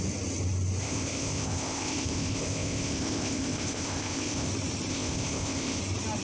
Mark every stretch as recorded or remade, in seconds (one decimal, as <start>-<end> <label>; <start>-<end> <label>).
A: 0.0-0.8 recorded; 0.8-4.5 remade; 4.5-4.9 recorded; 4.9-5.8 remade; 5.8-6.2 recorded